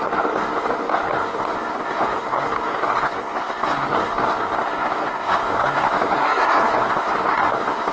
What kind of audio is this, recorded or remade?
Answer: remade